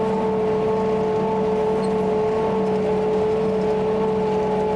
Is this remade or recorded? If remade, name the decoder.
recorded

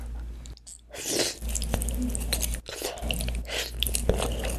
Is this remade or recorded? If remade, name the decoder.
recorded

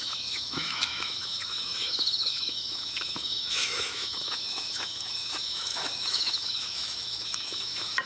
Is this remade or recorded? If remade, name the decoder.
remade, autoencoder, DAC-VAE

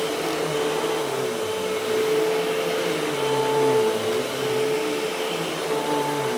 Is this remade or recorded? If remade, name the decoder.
recorded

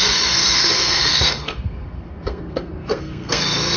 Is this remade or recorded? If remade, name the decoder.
remade, codec, SNAC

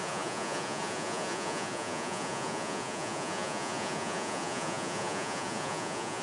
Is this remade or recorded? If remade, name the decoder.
remade, vocoder, Vocos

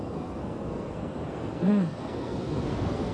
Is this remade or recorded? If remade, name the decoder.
remade, codec, SNAC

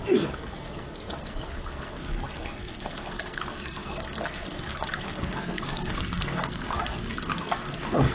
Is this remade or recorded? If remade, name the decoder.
remade, codec, SNAC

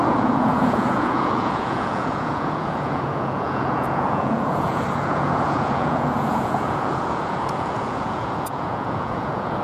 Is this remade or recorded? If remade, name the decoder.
remade, vocoder, Vocos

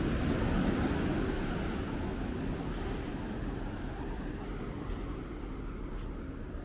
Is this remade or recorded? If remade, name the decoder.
recorded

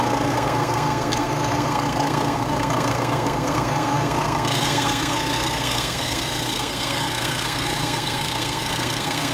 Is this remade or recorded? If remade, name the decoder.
remade, codec, SNAC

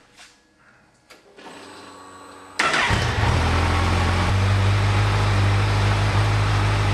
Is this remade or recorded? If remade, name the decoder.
recorded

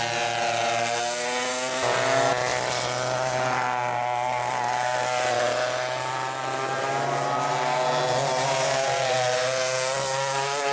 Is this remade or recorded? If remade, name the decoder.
recorded